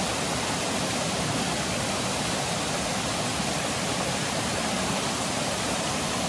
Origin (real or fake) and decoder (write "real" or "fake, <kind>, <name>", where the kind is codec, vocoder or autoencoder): real